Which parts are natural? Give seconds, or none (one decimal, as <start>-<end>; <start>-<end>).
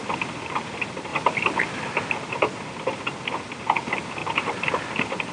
0.0-1.1; 1.6-4.2; 4.8-5.3